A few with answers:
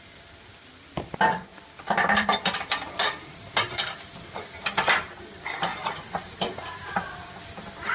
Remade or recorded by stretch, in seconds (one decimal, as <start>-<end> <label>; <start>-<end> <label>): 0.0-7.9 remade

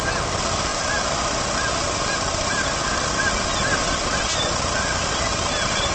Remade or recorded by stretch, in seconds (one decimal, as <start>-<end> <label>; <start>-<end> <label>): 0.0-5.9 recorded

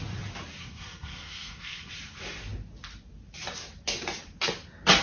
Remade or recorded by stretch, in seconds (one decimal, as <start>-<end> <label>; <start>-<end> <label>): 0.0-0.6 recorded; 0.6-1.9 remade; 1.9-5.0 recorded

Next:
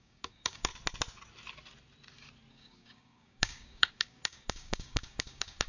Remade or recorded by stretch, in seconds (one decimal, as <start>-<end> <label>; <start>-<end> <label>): 0.0-0.7 remade; 0.7-2.5 recorded; 2.5-5.7 remade

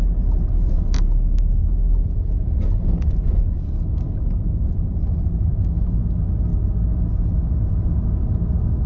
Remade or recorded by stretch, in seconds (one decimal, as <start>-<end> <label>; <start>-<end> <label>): 0.0-1.6 recorded; 1.6-2.3 remade; 2.3-5.5 recorded; 5.5-6.0 remade; 6.0-8.9 recorded